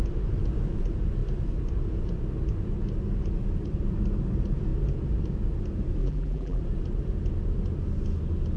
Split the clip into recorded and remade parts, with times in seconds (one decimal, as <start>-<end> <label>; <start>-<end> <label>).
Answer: 0.0-6.0 recorded; 6.0-6.6 remade; 6.6-8.6 recorded